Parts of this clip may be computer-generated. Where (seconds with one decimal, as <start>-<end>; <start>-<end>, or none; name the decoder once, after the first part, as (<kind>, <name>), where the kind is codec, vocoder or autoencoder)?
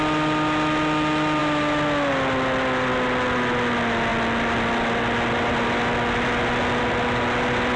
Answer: none